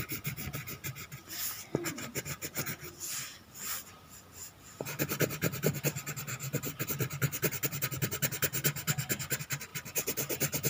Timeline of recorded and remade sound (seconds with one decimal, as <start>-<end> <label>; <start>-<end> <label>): 0.0-3.3 recorded; 3.3-7.8 remade; 7.8-9.7 recorded; 9.7-10.7 remade